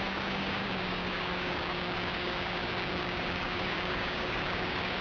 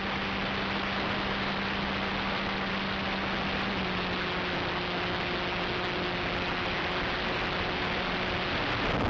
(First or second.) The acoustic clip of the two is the second